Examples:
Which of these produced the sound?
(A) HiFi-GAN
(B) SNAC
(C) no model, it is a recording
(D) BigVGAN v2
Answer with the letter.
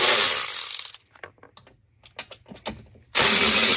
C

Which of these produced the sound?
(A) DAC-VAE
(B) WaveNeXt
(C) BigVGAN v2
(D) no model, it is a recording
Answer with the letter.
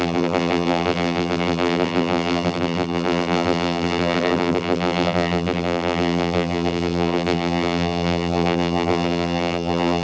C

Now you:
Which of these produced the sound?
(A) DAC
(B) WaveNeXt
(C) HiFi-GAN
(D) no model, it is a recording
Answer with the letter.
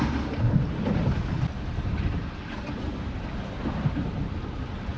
D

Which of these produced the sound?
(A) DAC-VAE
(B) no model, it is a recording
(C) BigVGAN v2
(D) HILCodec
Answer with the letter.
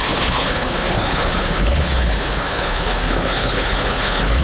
D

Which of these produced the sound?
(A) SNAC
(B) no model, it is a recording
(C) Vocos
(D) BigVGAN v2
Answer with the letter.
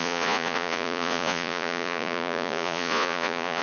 C